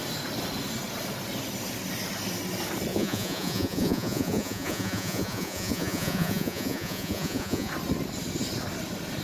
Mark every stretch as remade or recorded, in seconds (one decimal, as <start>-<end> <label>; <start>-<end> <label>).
0.0-2.9 recorded; 2.9-7.7 remade; 7.7-9.2 recorded